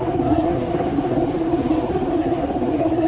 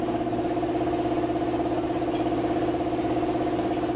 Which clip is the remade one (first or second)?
first